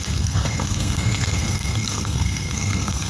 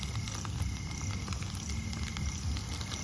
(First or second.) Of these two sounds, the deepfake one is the first